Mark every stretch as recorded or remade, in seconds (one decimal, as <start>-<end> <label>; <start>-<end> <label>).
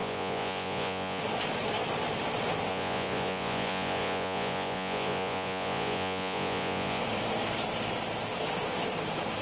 0.0-1.2 remade; 1.2-2.7 recorded; 2.7-7.0 remade; 7.0-9.4 recorded